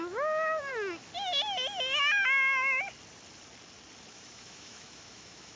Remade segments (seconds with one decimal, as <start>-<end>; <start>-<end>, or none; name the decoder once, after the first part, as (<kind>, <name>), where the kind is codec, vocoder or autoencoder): 0.0-0.7 (autoencoder, DAC-VAE); 4.1-5.6